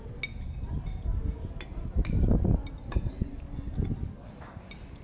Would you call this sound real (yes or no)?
yes